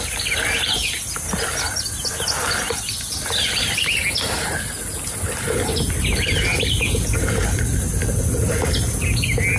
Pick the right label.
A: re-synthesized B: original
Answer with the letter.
B